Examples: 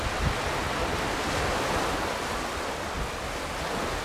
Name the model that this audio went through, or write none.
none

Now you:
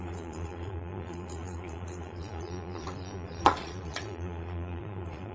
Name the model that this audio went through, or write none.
vocoder, Vocos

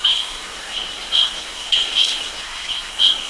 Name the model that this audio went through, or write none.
codec, SNAC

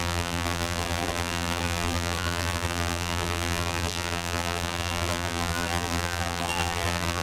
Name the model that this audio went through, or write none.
vocoder, BigVGAN v2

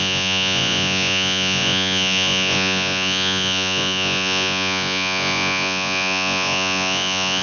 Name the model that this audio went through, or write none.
vocoder, Vocos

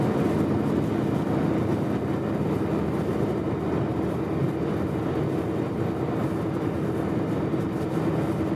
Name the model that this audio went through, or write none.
none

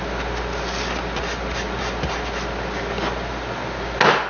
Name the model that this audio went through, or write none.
none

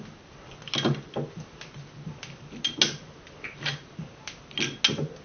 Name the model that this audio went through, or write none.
none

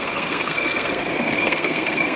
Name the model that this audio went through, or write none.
codec, SNAC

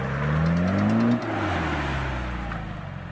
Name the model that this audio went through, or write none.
none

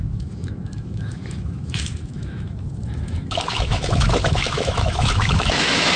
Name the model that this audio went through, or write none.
autoencoder, DAC-VAE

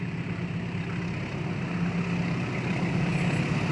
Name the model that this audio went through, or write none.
none